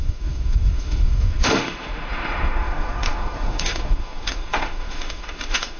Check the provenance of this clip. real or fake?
fake